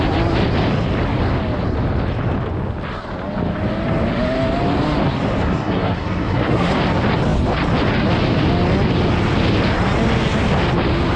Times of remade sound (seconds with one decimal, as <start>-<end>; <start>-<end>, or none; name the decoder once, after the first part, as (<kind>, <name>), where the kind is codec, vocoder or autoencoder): 5.4-6.7 (codec, SNAC)